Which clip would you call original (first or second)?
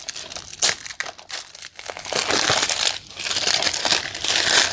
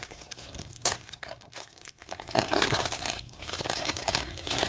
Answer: first